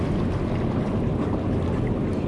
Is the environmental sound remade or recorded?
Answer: recorded